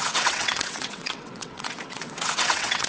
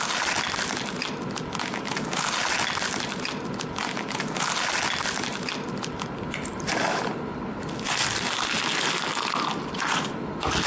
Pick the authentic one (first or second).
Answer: second